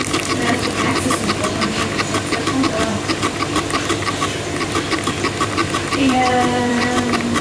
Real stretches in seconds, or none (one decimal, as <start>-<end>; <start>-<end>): 0.0-5.6; 6.8-7.4